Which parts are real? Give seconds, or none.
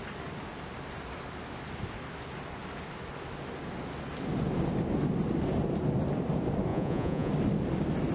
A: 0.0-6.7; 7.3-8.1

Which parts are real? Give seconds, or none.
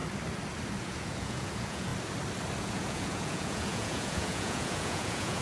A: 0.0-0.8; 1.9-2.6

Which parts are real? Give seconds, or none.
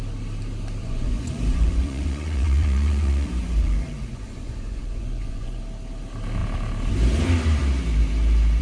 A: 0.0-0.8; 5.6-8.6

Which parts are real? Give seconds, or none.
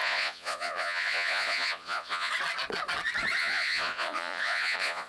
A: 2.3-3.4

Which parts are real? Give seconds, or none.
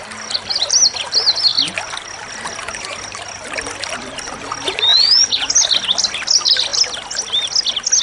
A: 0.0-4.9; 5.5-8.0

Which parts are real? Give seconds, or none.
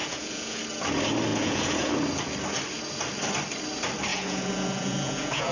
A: 0.6-1.3; 1.9-4.1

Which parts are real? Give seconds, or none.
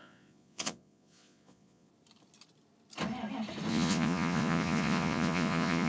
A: 1.9-3.7